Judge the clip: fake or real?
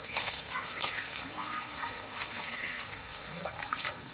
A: fake